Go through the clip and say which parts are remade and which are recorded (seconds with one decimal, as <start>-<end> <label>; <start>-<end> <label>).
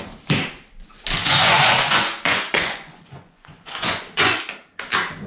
0.0-1.2 recorded; 1.2-4.4 remade; 4.4-5.3 recorded